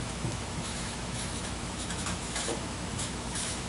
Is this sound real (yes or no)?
no